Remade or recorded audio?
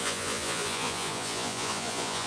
remade